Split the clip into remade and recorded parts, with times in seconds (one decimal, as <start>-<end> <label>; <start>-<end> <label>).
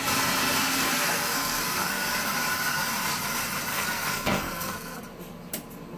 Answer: 0.0-0.6 recorded; 0.6-2.2 remade; 2.2-3.7 recorded; 3.7-5.0 remade; 5.0-6.0 recorded